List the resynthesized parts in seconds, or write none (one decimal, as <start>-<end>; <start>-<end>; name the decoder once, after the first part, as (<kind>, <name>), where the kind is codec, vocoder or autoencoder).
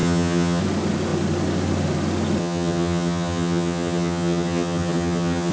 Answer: 0.0-0.6 (vocoder, HiFi-GAN); 2.4-5.5